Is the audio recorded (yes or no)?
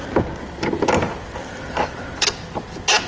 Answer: yes